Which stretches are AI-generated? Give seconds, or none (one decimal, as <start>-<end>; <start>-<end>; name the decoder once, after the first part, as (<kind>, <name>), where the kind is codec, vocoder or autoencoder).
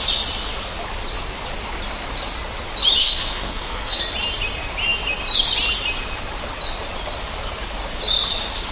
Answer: 3.0-4.0 (codec, SNAC)